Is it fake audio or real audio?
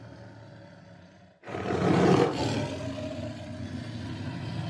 real